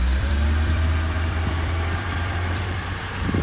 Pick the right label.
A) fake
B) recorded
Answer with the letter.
A